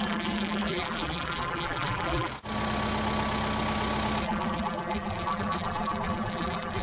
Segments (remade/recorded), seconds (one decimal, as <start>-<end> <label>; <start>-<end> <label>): 0.0-2.3 remade; 2.3-4.2 recorded; 4.2-6.8 remade